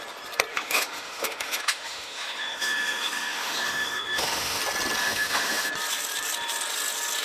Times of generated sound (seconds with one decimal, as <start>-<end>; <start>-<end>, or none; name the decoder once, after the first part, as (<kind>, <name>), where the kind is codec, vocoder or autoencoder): 0.5-4.6 (autoencoder, DAC-VAE); 5.0-5.7